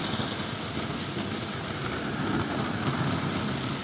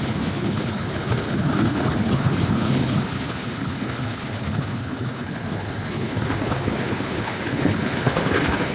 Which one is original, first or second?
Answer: first